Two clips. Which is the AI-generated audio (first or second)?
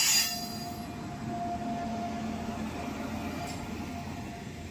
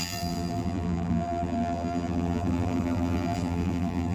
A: second